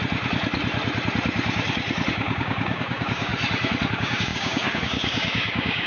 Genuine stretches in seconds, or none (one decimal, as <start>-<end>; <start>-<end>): 0.0-2.1; 3.3-3.9